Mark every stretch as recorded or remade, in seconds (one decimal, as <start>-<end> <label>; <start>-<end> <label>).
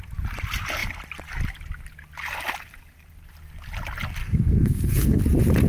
0.0-4.2 recorded; 4.2-5.2 remade; 5.2-5.7 recorded